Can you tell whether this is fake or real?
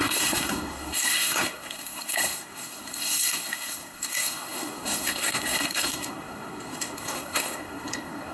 fake